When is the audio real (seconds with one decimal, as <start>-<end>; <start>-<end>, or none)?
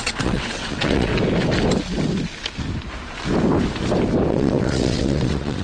1.1-4.3